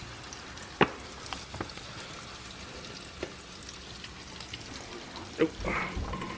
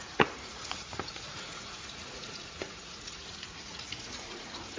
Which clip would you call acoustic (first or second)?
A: first